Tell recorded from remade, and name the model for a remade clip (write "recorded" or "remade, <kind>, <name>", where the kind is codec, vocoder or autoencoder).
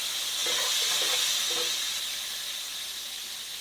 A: recorded